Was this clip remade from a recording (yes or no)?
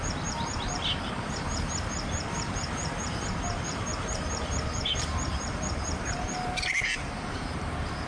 yes